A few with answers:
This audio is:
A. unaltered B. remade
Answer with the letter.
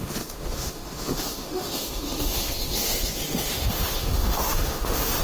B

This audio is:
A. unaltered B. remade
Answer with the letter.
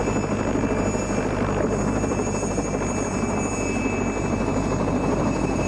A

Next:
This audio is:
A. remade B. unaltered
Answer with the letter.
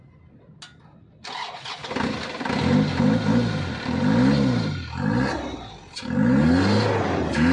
B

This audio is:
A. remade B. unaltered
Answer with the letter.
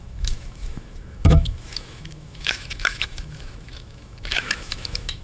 A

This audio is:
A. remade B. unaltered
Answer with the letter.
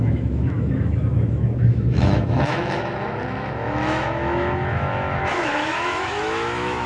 A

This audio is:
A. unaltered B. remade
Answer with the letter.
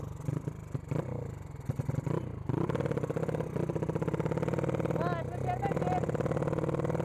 A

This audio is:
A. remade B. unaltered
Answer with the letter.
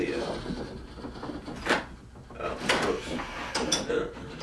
B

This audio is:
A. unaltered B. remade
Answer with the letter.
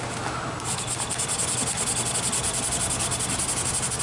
A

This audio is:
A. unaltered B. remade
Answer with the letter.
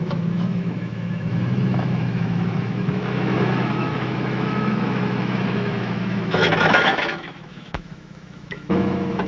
B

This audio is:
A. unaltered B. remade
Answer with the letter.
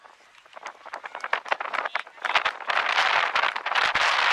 A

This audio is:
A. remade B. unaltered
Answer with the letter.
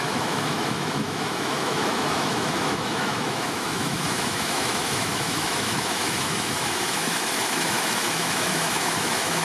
A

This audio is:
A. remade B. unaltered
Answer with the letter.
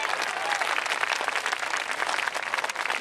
B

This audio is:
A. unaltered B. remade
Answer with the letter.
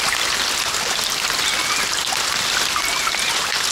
A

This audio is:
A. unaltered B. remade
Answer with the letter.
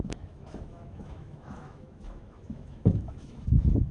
B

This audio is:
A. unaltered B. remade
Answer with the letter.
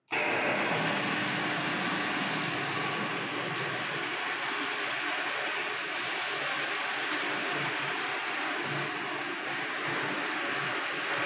A